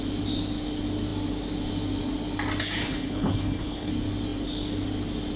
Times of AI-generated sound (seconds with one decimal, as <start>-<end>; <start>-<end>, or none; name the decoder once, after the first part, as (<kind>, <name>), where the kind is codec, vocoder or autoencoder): 2.8-3.9 (codec, HILCodec)